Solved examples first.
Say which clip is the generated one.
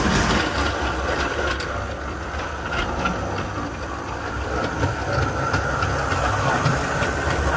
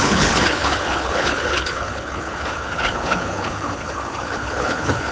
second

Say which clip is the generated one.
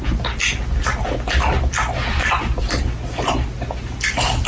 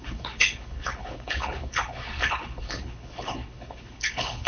second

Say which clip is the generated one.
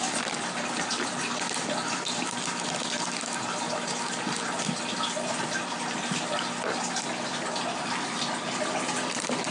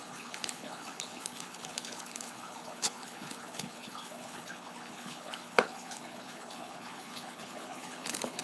second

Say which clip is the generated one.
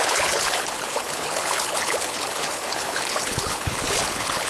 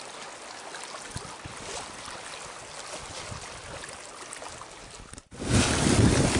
first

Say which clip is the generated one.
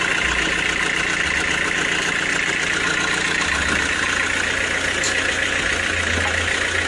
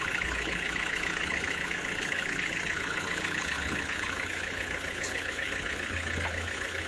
second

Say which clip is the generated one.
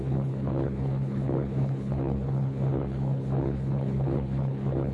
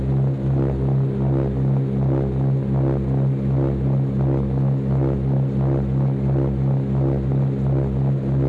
first